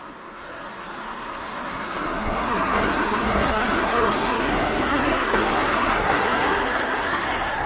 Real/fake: fake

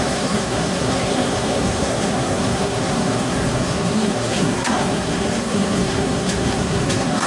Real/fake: fake